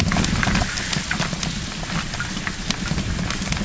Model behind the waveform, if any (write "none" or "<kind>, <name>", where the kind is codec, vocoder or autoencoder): none